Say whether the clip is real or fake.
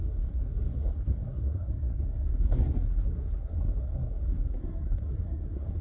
fake